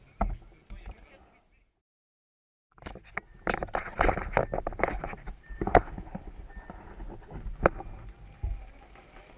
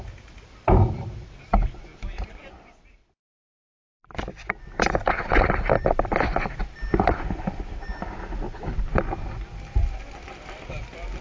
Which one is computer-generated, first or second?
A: second